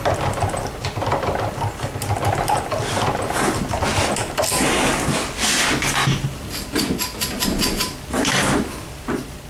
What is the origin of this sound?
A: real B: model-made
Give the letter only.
A